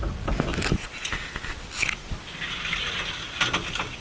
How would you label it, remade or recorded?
recorded